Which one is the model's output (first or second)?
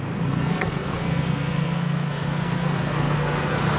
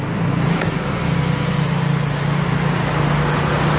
first